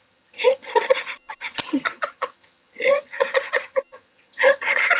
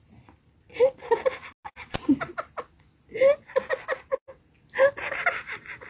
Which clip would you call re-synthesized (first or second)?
first